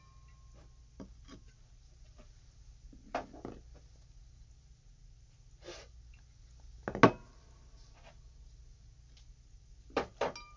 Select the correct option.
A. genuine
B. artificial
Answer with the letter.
A